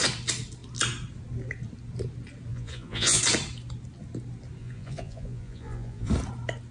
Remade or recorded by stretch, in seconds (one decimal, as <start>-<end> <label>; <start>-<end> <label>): 0.0-2.5 recorded; 2.5-3.2 remade; 3.2-4.6 recorded; 4.6-6.1 remade; 6.1-6.7 recorded